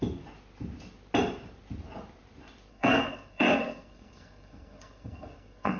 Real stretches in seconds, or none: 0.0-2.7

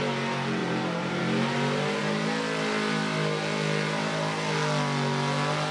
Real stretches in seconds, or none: 0.0-0.6; 1.2-5.7

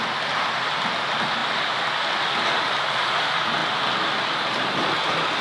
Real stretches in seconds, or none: 0.0-5.4

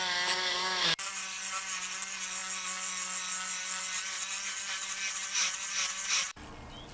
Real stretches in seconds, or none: 0.0-6.9

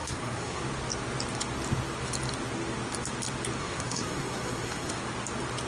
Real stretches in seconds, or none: 0.6-3.6; 5.0-5.7

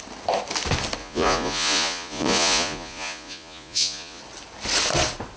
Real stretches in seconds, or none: 0.0-1.0; 4.2-5.4

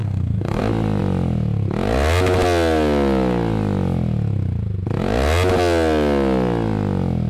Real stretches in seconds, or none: 0.6-7.3